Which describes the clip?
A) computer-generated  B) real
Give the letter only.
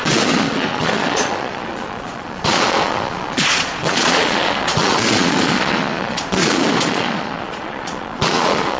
A